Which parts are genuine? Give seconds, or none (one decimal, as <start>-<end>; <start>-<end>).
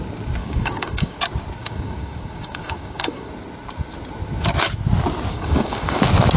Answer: 0.0-0.4; 1.2-1.6; 3.3-5.3; 6.0-6.4